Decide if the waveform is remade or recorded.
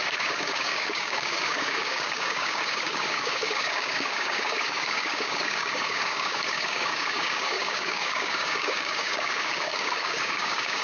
remade